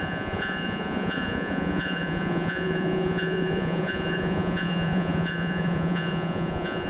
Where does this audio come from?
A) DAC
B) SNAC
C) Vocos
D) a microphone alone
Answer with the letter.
C